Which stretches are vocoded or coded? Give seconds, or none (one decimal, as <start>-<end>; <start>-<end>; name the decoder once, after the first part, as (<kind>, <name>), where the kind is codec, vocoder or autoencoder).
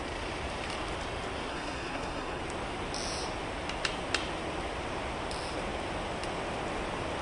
1.5-2.4 (codec, SNAC)